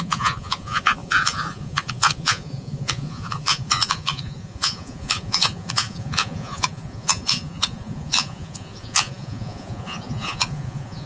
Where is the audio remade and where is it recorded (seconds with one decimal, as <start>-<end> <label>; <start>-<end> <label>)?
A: 0.0-11.1 remade